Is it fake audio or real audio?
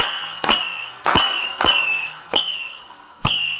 fake